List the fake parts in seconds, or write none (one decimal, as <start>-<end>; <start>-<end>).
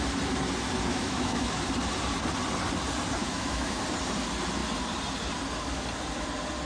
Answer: 0.9-1.6; 3.2-3.8